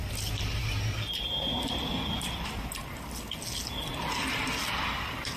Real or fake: real